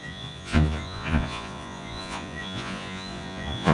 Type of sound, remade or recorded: remade